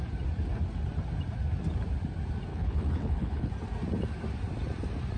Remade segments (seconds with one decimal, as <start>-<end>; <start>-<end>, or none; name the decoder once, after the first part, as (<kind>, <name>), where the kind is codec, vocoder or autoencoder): 2.5-3.5 (codec, HILCodec)